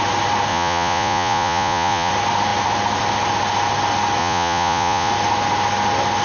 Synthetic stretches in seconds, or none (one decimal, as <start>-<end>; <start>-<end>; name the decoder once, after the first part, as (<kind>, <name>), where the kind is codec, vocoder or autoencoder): 0.5-2.1 (vocoder, Vocos); 4.2-5.1